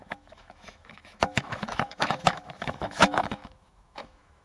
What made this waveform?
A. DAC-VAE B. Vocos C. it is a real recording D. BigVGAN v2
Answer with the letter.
A